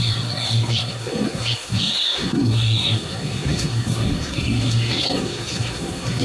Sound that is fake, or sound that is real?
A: fake